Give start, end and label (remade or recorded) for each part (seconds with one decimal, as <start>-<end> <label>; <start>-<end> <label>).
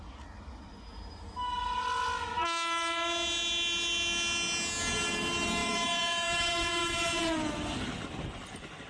0.0-5.6 recorded; 5.6-7.5 remade; 7.5-8.9 recorded